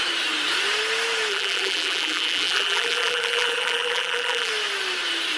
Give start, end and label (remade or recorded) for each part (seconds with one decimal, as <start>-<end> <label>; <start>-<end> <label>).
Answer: 0.0-1.3 recorded; 1.3-4.5 remade; 4.5-5.4 recorded